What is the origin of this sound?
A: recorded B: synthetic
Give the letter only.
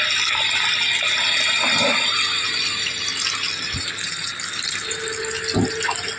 A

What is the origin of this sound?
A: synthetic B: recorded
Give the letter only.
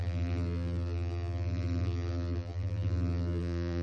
A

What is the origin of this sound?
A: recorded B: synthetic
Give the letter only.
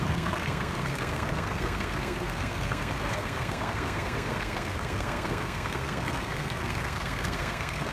B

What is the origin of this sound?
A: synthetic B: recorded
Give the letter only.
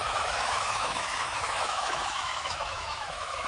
A